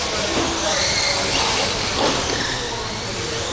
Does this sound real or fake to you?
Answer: real